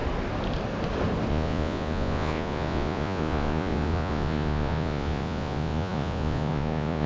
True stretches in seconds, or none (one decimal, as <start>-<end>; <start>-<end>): 0.0-1.3